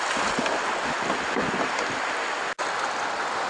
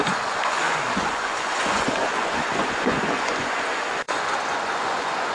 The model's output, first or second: second